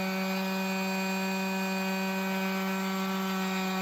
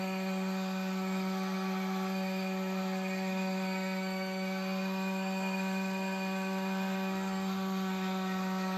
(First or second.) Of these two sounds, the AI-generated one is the second